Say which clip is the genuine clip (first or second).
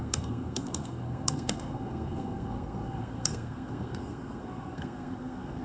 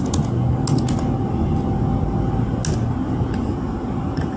second